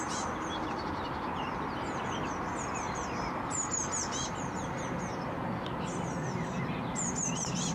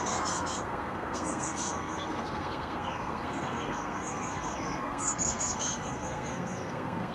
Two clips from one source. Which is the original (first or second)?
first